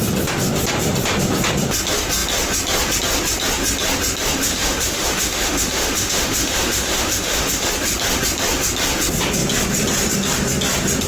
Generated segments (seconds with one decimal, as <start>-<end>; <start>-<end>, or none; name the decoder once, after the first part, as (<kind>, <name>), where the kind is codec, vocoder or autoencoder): 4.4-7.7 (autoencoder, DAC-VAE)